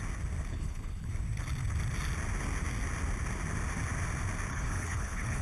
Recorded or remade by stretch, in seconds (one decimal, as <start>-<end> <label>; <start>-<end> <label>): 0.0-0.5 recorded; 0.5-1.1 remade; 1.1-4.5 recorded; 4.5-5.4 remade